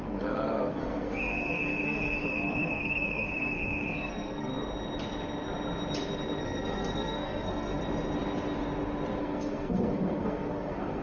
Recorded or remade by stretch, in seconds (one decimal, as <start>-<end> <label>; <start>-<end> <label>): 0.0-4.5 remade; 4.5-6.4 recorded; 6.4-7.8 remade; 7.8-9.2 recorded; 9.2-11.0 remade